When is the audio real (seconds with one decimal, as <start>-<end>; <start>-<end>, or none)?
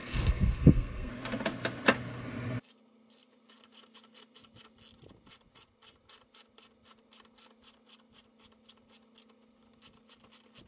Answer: 1.1-10.7